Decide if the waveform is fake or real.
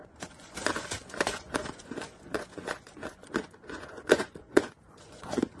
fake